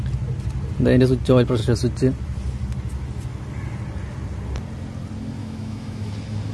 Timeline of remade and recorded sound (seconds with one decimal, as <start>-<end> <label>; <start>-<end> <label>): 0.0-5.4 recorded; 5.4-6.1 remade; 6.1-6.5 recorded